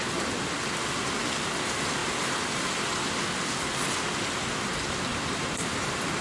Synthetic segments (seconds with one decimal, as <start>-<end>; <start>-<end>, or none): 5.1-6.2

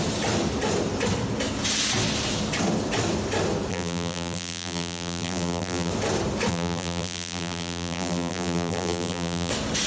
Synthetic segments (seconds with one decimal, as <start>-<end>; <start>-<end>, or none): 3.7-5.9; 6.5-9.5

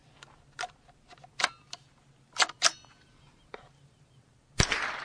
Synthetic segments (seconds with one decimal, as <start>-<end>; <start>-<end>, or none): 3.0-4.3